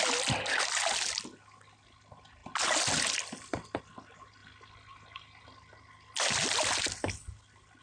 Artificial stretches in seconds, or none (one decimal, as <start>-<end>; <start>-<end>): none